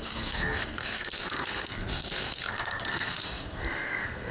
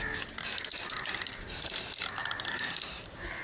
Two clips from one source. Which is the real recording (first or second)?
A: second